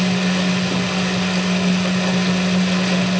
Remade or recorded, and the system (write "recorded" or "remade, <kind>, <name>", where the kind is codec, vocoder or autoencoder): recorded